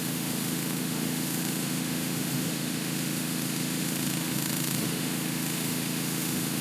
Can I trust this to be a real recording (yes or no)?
no